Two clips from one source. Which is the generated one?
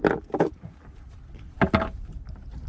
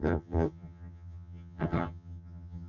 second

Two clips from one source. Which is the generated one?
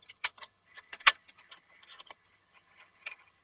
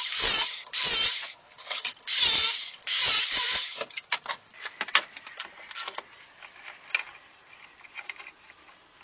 first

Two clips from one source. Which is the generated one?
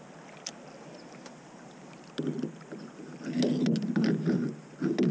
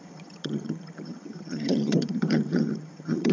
second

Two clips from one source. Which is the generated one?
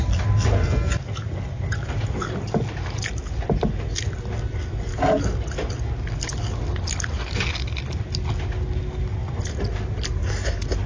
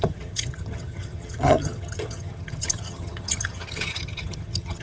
second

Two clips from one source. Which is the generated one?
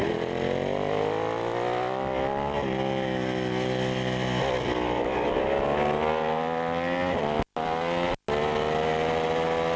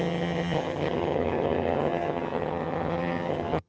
second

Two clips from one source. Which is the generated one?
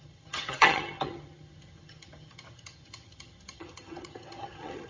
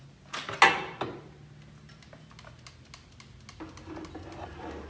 first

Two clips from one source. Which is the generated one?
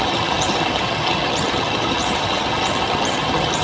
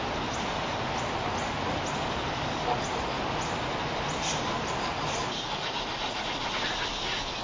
first